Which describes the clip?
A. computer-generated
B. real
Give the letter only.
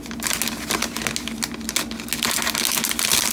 B